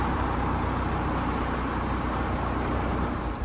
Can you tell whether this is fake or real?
fake